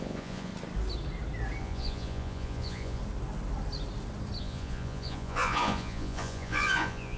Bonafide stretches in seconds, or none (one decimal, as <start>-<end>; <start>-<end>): 0.5-1.6; 3.0-4.4